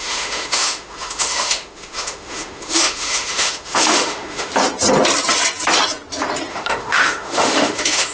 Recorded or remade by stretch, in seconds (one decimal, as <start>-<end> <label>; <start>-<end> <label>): 0.0-4.5 remade; 4.5-6.5 recorded; 6.5-8.1 remade